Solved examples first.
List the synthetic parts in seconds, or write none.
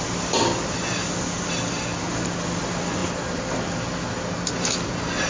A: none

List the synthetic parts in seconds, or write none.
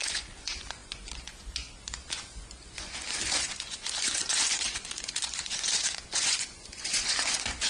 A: 0.0-7.7 (vocoder, Vocos)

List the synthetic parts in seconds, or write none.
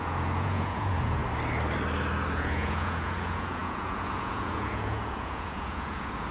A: 0.0-1.2 (vocoder, Vocos); 2.3-6.3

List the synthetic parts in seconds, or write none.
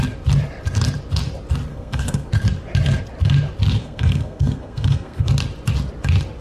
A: 1.7-2.3 (codec, SNAC); 3.8-5.3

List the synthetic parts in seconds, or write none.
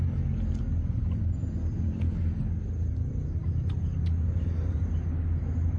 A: none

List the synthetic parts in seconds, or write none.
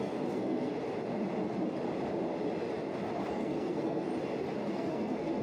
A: 0.0-0.7 (codec, SNAC); 3.3-4.1; 4.7-5.4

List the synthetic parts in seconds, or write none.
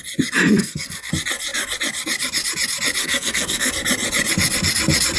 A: 0.6-1.1 (codec, SNAC); 3.0-3.7